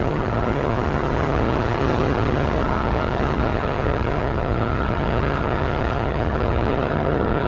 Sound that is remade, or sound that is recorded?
remade